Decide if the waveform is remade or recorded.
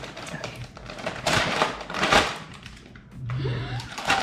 remade